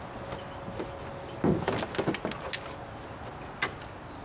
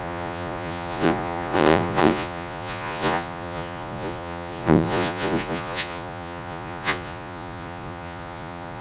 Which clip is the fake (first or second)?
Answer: second